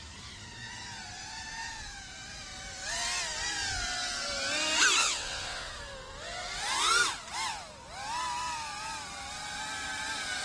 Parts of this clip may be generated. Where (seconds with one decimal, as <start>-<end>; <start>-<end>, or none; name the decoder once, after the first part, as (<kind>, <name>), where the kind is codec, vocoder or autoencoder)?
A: 5.0-5.7 (vocoder, WaveNeXt)